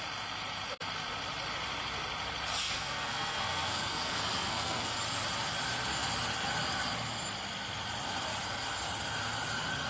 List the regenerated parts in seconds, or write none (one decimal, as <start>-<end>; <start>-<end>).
2.6-4.9